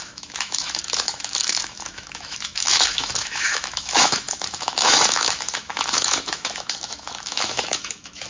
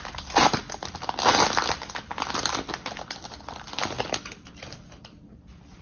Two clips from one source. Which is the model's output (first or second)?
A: first